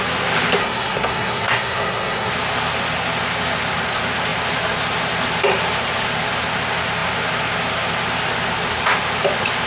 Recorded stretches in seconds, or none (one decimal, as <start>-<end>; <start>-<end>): 0.0-0.6; 2.3-9.7